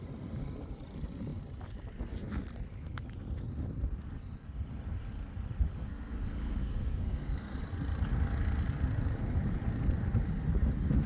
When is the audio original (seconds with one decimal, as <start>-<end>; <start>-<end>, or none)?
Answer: 0.0-5.7; 7.6-11.1